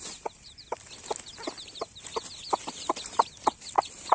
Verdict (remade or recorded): remade